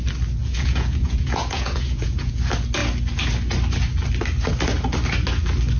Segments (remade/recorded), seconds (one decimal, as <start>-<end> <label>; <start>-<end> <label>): 0.0-0.4 recorded; 0.4-2.4 remade; 2.4-5.8 recorded